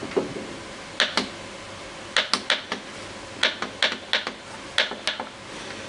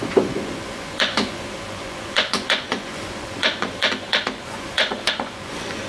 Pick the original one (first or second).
first